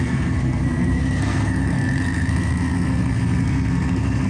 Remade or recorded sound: remade